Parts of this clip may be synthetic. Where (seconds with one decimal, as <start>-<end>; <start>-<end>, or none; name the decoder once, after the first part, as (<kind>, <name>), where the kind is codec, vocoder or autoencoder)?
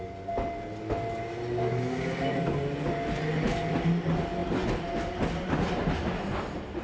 none